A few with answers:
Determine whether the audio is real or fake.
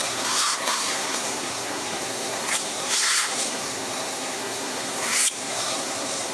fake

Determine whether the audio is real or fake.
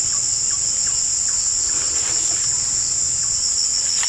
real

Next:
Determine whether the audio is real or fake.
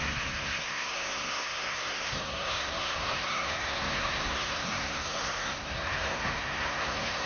fake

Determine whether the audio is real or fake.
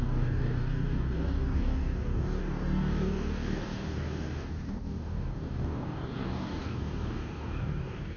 fake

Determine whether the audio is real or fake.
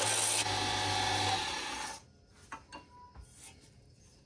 real